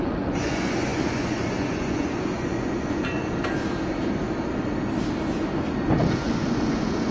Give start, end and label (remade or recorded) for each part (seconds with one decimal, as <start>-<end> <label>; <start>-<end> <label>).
0.0-3.4 remade; 3.4-6.0 recorded; 6.0-7.1 remade